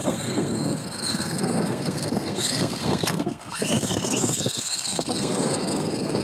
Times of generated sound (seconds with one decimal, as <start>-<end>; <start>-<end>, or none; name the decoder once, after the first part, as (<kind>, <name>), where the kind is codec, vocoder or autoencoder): 0.0-6.2 (codec, SNAC)